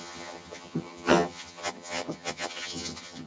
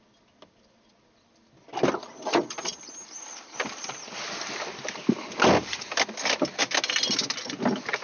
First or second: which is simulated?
first